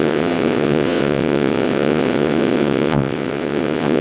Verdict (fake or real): fake